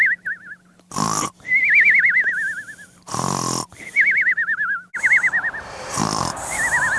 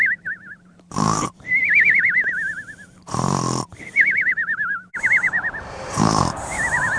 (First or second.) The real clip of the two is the first